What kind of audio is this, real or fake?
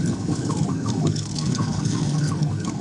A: fake